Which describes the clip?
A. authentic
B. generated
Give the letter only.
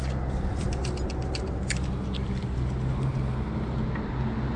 A